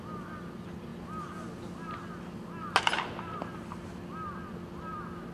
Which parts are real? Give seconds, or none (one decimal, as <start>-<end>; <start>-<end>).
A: 0.0-5.3

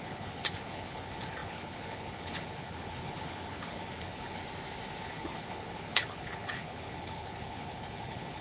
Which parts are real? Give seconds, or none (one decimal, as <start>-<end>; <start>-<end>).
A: 4.4-5.0